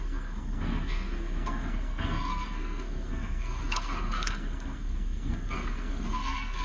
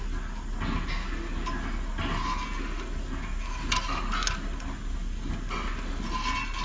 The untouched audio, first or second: second